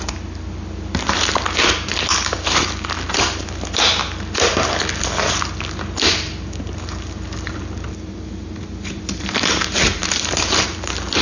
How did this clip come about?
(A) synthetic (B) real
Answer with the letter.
B